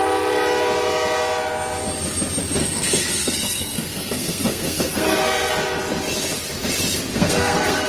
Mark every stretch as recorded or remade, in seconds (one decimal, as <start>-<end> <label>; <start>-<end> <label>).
0.0-2.6 recorded; 2.6-5.5 remade; 5.5-7.1 recorded; 7.1-7.9 remade